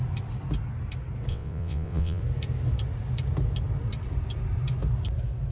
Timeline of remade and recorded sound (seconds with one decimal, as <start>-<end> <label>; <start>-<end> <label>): 0.0-1.3 recorded; 1.3-2.2 remade; 2.2-5.5 recorded